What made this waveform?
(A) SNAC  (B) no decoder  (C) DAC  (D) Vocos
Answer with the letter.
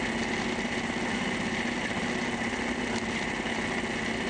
B